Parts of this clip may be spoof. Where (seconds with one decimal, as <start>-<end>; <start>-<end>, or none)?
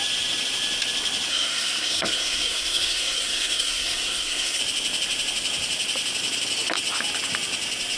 1.3-4.6